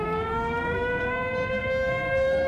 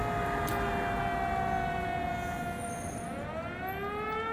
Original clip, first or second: second